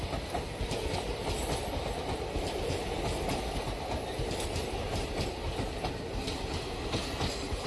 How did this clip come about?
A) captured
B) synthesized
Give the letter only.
A